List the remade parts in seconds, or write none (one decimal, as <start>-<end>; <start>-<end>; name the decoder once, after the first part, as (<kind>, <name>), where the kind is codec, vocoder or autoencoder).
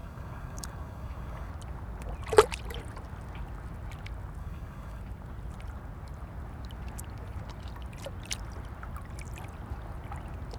0.0-1.5 (codec, DAC); 4.4-5.0